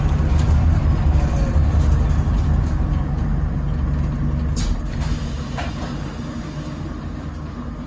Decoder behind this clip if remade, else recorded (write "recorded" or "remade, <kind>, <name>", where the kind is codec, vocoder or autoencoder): recorded